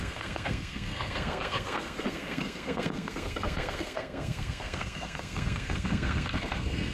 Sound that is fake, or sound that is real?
fake